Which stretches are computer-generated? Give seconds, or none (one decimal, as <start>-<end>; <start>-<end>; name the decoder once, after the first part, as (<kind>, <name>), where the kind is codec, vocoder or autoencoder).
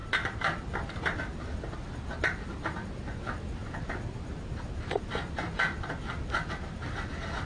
0.0-3.6 (vocoder, BigVGAN v2); 4.9-7.5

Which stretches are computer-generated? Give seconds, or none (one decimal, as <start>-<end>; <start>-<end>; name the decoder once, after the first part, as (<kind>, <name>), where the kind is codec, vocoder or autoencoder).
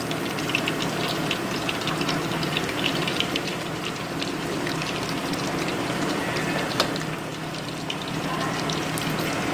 1.6-6.2 (vocoder, BigVGAN v2)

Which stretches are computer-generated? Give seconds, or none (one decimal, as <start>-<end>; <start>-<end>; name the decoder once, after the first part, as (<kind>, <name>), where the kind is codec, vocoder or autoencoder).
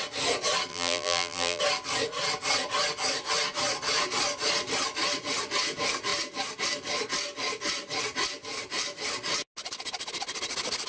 0.7-1.6 (vocoder, BigVGAN v2)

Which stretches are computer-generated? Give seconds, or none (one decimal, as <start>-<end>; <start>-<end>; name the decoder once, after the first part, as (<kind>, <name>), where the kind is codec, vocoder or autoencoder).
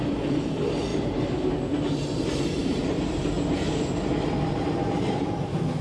0.9-1.5 (vocoder, BigVGAN v2); 2.6-3.2